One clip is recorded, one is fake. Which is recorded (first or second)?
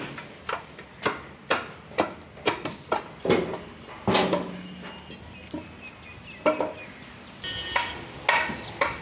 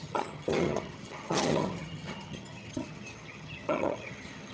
first